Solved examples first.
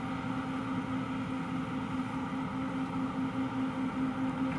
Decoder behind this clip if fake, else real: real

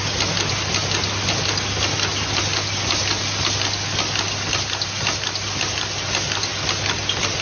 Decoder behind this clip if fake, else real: real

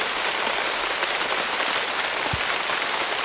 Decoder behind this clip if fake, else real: real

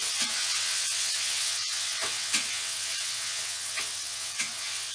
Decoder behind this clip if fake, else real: fake, vocoder, WaveNeXt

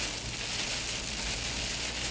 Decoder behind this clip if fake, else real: real